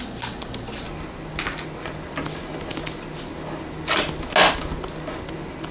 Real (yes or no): yes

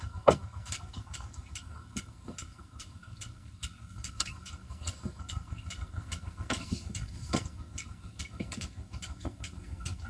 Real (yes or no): no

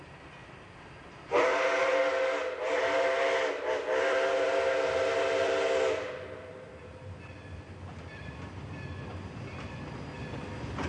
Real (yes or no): yes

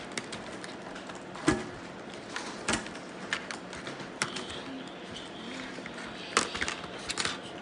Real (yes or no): yes